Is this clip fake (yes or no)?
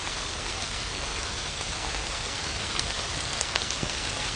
yes